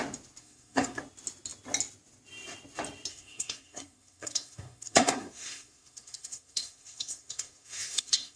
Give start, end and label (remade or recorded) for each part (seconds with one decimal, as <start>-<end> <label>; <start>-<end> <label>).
0.0-0.4 recorded; 0.4-1.0 remade; 1.0-3.1 recorded; 3.1-8.4 remade